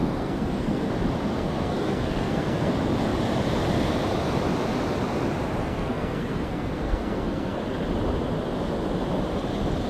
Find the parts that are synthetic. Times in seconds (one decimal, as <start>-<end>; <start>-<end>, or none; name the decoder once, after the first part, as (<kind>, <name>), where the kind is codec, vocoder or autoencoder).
0.0-0.9 (codec, SNAC); 1.3-2.7; 5.6-7.6